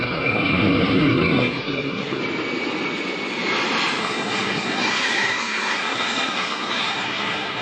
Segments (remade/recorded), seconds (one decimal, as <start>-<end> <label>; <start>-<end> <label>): 0.0-2.2 remade; 2.2-4.0 recorded; 4.0-7.6 remade